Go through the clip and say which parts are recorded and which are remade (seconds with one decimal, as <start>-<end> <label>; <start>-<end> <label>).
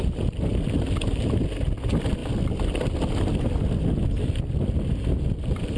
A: 0.0-5.8 recorded